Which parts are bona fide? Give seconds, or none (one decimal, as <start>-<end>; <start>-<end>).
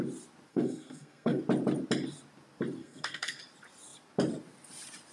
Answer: 0.0-0.5; 1.4-2.8; 3.4-5.1